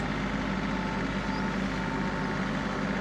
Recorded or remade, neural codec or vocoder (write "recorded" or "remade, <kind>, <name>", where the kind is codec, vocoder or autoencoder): recorded